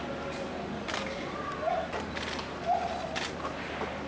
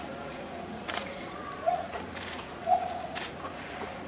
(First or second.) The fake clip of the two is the second